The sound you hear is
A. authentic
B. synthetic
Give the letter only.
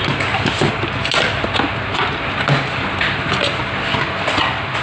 A